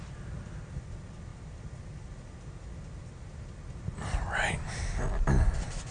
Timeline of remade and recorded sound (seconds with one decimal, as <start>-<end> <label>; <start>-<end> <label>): 0.0-5.9 recorded